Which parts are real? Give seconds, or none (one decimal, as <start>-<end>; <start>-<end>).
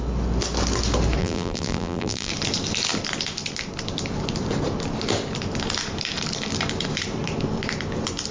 0.0-1.2; 2.3-8.3